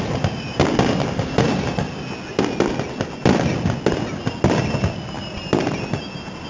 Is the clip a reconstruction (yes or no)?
no